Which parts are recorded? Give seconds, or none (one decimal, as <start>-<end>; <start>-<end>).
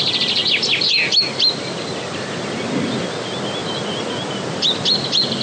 0.0-5.4